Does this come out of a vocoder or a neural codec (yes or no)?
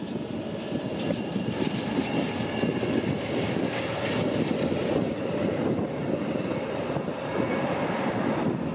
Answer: no